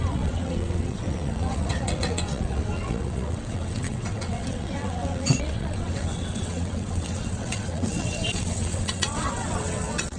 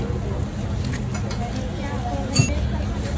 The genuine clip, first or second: second